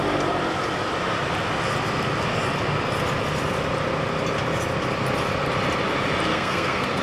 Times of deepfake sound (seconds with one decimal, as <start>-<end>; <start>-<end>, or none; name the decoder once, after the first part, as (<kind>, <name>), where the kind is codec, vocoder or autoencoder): 6.3-7.0 (codec, SNAC)